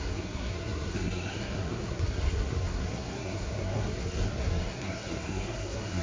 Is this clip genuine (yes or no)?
no